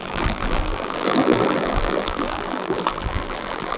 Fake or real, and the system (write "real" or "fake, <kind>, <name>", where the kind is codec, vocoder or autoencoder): fake, vocoder, BigVGAN v2